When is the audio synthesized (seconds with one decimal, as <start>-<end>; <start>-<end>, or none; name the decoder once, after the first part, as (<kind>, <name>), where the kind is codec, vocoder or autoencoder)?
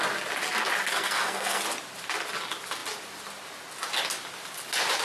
0.9-1.6 (codec, SNAC)